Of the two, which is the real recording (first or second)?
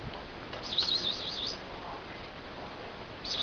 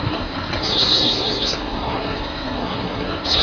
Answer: first